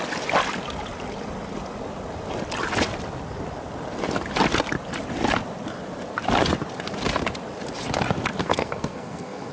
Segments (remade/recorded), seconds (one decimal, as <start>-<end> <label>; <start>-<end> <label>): 0.0-8.4 recorded; 8.4-9.5 remade